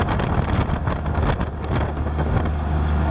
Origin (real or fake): real